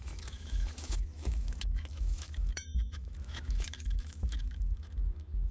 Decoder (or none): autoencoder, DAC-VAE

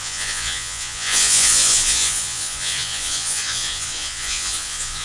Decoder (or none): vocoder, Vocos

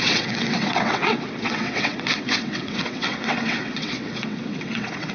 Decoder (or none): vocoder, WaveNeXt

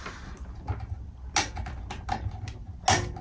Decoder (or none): none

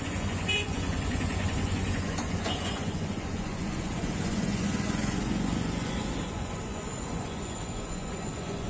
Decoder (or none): vocoder, Vocos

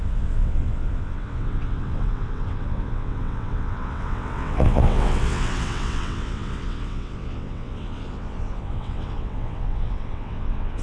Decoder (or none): vocoder, WaveNeXt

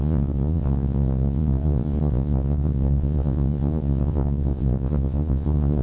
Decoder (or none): vocoder, Vocos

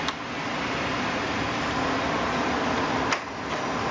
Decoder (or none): none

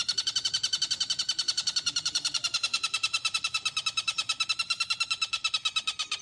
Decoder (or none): vocoder, BigVGAN v2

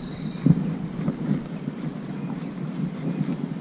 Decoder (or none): none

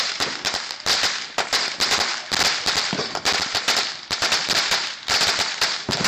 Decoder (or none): none